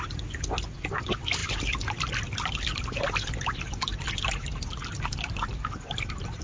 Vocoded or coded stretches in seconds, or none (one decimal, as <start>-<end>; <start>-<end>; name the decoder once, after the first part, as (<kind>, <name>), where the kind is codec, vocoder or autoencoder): none